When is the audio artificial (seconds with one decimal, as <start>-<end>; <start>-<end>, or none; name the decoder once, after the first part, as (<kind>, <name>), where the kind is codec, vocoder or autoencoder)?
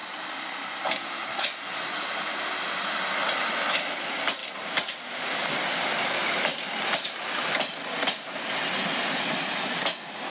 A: 4.4-5.5 (vocoder, BigVGAN v2); 6.5-7.1